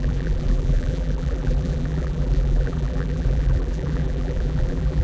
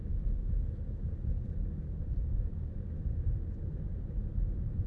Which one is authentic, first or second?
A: second